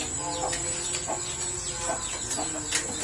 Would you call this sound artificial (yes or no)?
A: no